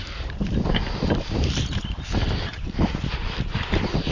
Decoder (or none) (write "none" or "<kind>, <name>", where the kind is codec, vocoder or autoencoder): vocoder, BigVGAN v2